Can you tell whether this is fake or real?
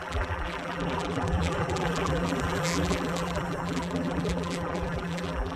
fake